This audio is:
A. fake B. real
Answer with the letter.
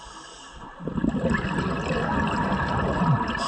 B